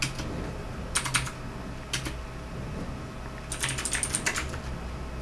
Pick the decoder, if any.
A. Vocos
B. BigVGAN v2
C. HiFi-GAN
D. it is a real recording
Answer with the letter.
D